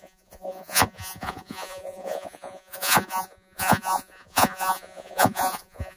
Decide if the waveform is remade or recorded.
remade